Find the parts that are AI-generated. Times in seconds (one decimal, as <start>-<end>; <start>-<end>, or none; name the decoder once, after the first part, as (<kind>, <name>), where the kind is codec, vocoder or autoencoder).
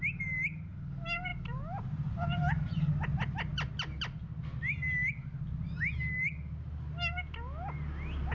1.3-2.9 (vocoder, BigVGAN v2)